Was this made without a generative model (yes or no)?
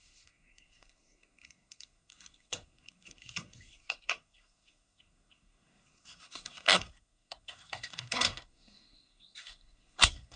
no